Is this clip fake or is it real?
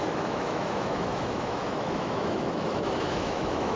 fake